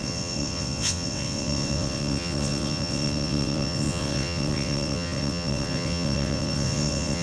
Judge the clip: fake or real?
fake